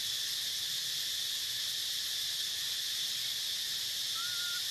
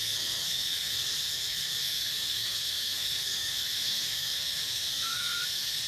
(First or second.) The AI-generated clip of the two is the second